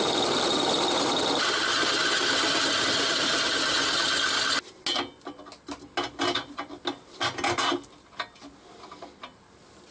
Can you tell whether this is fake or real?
real